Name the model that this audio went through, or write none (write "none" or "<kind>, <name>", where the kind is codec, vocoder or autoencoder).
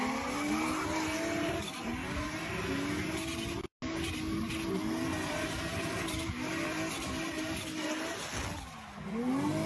none